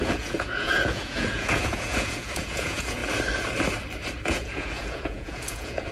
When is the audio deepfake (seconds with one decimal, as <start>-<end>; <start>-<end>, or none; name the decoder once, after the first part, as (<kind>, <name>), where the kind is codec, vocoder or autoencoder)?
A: 0.0-3.0 (vocoder, Vocos); 4.2-5.9